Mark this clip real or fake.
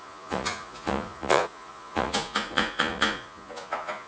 fake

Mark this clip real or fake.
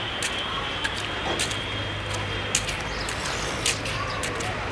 real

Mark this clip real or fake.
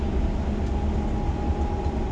real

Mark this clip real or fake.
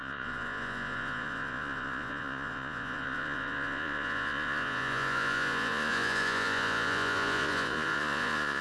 fake